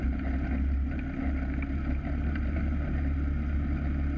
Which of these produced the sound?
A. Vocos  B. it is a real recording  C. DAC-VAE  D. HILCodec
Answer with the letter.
B